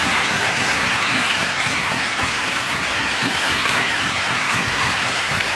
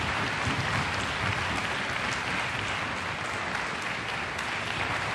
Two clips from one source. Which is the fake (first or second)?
first